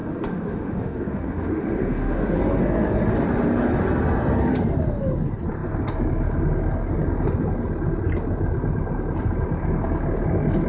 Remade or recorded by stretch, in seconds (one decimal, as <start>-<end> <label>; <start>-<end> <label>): 0.0-2.4 remade; 2.4-10.7 recorded